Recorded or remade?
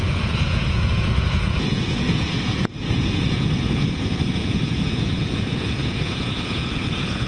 remade